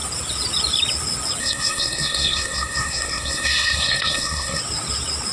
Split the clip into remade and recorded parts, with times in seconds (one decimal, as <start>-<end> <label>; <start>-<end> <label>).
0.0-1.4 recorded; 1.4-4.6 remade; 4.6-5.3 recorded